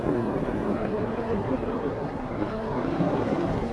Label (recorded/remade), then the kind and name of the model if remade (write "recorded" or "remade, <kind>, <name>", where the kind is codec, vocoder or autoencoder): remade, codec, SNAC